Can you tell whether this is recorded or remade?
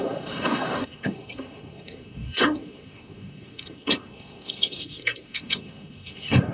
remade